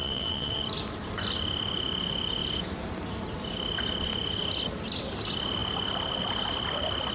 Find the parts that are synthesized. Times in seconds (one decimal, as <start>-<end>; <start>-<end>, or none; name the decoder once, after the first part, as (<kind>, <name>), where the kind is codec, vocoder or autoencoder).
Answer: 0.0-0.6 (vocoder, WaveNeXt)